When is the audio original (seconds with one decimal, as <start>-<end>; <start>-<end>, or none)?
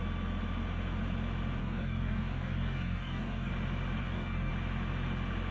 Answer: 0.0-1.6; 3.5-4.0; 4.5-5.5